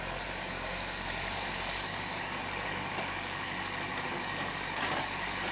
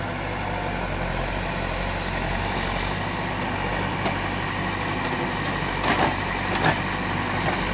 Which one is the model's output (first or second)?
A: first